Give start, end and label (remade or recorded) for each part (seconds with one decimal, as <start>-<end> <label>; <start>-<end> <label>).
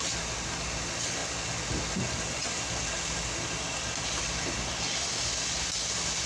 0.0-6.3 recorded